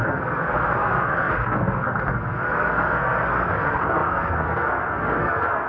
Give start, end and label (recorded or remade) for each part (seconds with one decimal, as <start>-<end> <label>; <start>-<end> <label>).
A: 0.0-5.7 remade